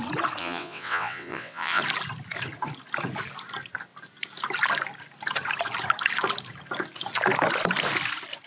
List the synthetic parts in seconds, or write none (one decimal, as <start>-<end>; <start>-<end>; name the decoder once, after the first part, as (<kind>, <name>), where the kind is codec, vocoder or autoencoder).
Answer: 0.4-1.8 (vocoder, WaveNeXt)